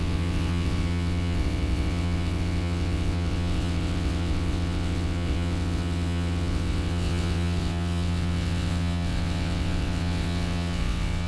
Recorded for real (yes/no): no